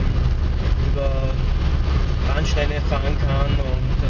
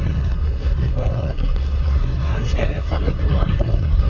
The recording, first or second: first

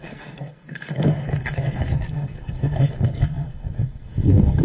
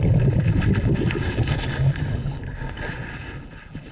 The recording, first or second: second